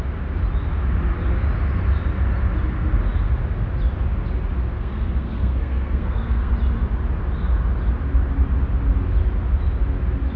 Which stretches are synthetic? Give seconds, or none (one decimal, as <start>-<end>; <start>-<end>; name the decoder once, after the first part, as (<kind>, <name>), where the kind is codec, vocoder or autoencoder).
4.7-6.5 (codec, SNAC)